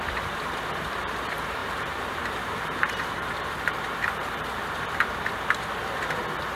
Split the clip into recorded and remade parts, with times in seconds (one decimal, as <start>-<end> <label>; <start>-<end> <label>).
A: 0.0-1.6 recorded; 1.6-5.6 remade; 5.6-6.6 recorded

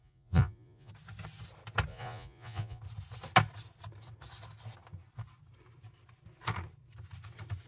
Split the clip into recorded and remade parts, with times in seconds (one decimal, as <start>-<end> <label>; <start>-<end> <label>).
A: 0.0-0.9 remade; 0.9-1.9 recorded; 1.9-2.8 remade; 2.8-7.7 recorded

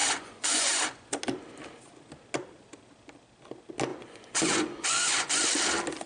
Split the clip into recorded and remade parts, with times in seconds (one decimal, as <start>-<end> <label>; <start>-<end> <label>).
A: 0.0-1.2 remade; 1.2-3.9 recorded; 3.9-5.4 remade; 5.4-6.1 recorded

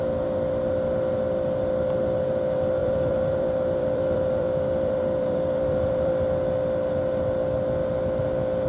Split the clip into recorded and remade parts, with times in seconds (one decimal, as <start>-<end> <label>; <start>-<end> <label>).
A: 0.0-2.8 recorded; 2.8-6.1 remade; 6.1-8.7 recorded

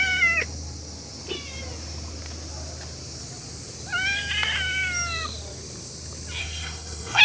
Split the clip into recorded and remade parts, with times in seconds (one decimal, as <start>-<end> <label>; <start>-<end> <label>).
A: 0.0-6.4 recorded; 6.4-7.2 remade

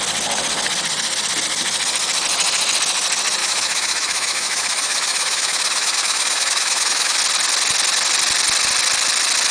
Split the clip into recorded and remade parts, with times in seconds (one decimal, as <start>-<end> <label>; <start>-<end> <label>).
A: 0.0-3.4 recorded; 3.4-7.2 remade; 7.2-9.5 recorded

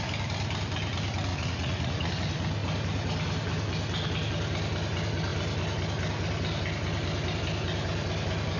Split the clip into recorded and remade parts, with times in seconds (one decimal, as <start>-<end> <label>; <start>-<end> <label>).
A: 0.0-1.3 recorded; 1.3-2.1 remade; 2.1-8.6 recorded